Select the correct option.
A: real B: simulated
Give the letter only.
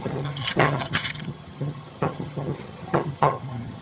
B